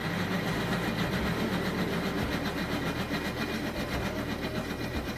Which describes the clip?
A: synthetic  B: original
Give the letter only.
B